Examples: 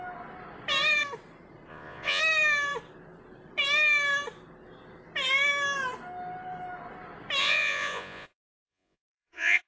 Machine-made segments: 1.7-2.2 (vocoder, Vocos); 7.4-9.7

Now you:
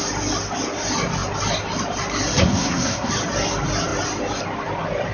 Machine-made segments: 2.4-3.1 (codec, SNAC)